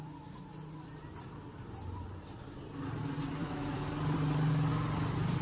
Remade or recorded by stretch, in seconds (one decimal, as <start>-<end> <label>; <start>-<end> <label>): 0.0-3.4 recorded; 3.4-3.9 remade; 3.9-5.4 recorded

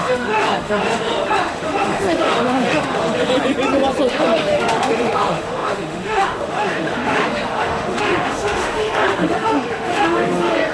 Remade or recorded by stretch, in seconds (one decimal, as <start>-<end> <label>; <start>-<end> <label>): 0.0-3.3 remade; 3.3-4.1 recorded; 4.1-10.7 remade